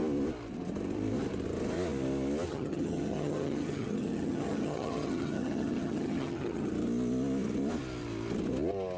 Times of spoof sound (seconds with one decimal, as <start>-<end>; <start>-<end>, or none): 2.5-6.7